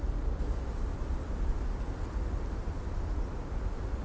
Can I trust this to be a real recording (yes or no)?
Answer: yes